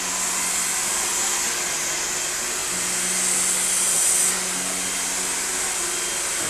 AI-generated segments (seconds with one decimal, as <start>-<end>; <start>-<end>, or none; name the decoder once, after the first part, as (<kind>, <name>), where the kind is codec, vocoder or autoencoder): none